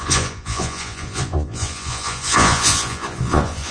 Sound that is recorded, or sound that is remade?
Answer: remade